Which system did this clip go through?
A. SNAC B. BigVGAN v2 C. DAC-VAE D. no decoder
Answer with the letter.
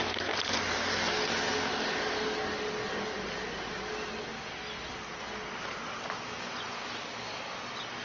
D